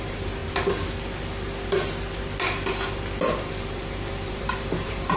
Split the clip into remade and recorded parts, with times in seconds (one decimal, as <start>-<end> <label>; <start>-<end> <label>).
0.0-0.4 remade; 0.4-3.5 recorded; 3.5-5.2 remade